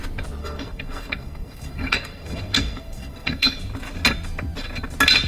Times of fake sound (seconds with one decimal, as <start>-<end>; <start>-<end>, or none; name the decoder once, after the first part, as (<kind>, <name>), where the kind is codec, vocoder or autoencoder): 0.4-3.6 (codec, SNAC)